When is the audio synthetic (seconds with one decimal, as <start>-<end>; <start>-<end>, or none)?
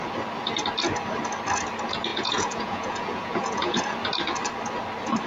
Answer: 2.1-3.8